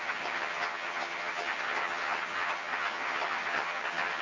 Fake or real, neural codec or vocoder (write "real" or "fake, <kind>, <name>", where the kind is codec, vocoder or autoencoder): fake, vocoder, HiFi-GAN